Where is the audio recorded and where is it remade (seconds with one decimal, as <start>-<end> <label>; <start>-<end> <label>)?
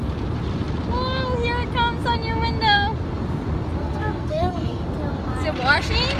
0.0-3.8 recorded; 3.8-4.8 remade; 4.8-6.2 recorded